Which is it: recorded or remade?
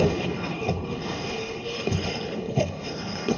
remade